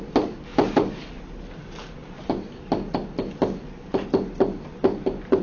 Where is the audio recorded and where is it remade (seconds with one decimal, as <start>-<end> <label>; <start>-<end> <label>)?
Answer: 0.0-5.4 recorded